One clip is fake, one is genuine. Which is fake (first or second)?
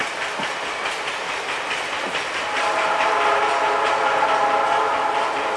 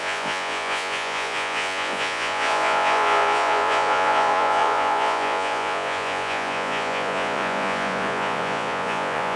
second